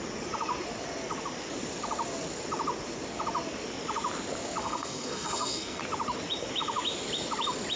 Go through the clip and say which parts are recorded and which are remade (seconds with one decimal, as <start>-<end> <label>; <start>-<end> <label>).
0.0-4.6 recorded; 4.6-5.8 remade; 5.8-7.8 recorded